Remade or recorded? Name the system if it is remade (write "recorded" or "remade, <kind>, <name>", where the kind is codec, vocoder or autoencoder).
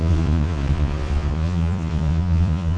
remade, vocoder, Vocos